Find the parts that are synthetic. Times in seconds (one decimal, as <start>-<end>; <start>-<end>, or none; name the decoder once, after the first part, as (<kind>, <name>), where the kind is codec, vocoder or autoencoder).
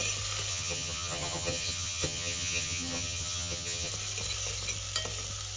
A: 0.5-3.9 (vocoder, HiFi-GAN)